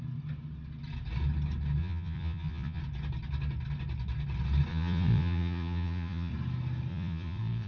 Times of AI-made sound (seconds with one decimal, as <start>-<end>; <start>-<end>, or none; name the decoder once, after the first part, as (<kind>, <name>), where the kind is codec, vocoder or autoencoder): 1.8-2.8 (vocoder, Vocos); 4.7-6.3; 6.9-7.7